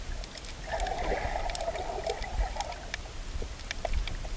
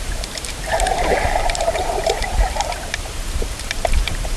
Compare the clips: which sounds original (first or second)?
first